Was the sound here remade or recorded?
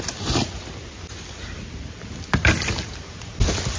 recorded